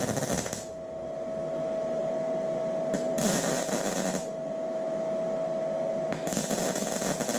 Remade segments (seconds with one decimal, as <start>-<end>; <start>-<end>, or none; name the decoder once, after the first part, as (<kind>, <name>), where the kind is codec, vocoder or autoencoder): none